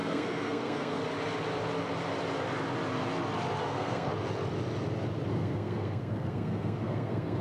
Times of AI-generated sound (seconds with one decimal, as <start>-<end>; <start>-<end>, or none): 0.0-1.0; 3.6-4.1; 5.3-7.4